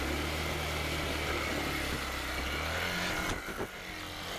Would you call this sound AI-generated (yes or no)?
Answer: no